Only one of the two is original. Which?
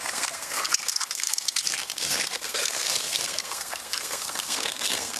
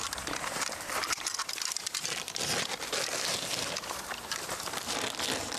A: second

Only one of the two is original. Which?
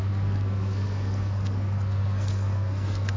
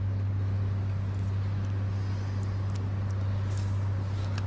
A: second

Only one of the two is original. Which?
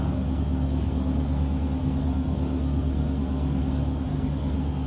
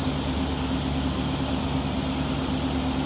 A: second